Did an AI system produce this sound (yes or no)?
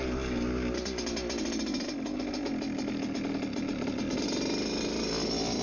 no